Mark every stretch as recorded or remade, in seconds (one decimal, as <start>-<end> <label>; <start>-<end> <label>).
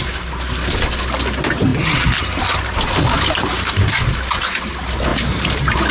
0.0-5.1 recorded; 5.1-5.9 remade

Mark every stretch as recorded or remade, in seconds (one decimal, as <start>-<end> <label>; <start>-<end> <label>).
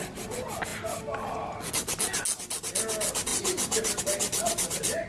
0.0-5.1 recorded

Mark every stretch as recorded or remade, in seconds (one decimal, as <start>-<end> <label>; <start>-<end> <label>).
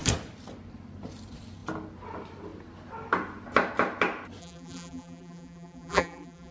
0.0-4.4 recorded; 4.4-6.5 remade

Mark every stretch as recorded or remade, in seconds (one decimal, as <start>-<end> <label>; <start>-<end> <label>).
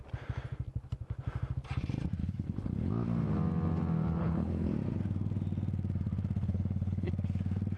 0.0-2.2 recorded; 2.2-2.9 remade; 2.9-4.2 recorded; 4.2-4.7 remade; 4.7-6.4 recorded; 6.4-7.1 remade; 7.1-7.8 recorded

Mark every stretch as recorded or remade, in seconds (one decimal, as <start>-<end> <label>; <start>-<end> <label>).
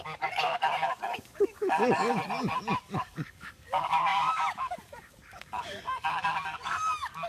0.0-2.2 remade; 2.2-2.8 recorded; 2.8-7.3 remade